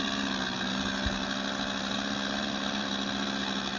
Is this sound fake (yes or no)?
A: no